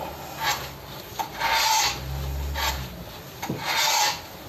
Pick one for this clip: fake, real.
real